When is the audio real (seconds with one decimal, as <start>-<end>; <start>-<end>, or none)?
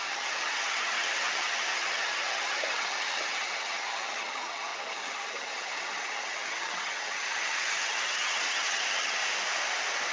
9.2-10.1